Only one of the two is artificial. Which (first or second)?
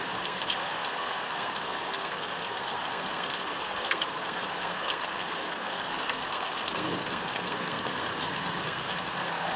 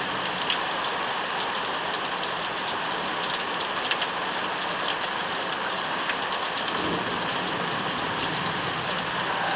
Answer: first